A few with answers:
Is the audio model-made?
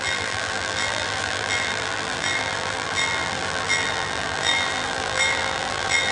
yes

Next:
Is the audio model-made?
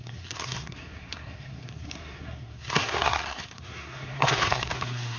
yes